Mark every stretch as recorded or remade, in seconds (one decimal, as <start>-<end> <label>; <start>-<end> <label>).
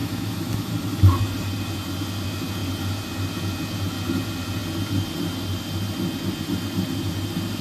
0.0-0.7 remade; 0.7-7.6 recorded